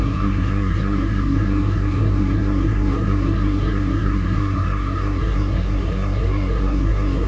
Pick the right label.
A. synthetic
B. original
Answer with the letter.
A